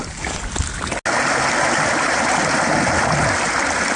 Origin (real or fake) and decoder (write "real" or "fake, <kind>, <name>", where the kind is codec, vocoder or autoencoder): real